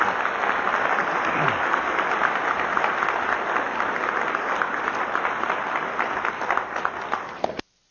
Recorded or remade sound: recorded